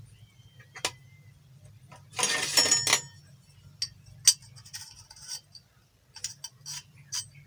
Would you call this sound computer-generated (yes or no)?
no